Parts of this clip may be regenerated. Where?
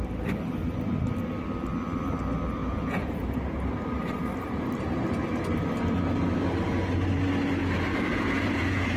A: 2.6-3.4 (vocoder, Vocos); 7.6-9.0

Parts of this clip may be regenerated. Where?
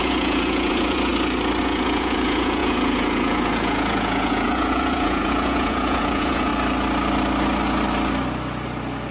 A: 0.0-1.1 (vocoder, Vocos); 1.6-6.5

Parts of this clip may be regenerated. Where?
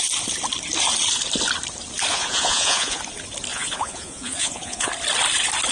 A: 2.1-3.0 (vocoder, Vocos); 3.5-4.9